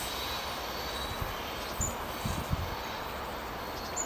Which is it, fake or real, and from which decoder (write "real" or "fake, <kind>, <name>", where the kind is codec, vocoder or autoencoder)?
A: real